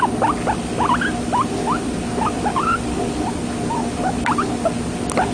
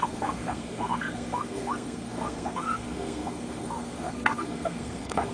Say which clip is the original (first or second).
first